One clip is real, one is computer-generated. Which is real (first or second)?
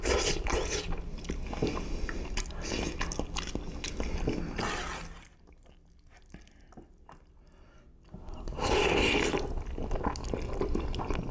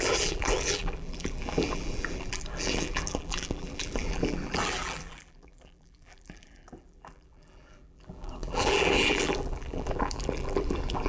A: first